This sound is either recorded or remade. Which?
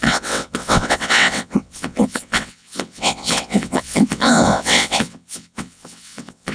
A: remade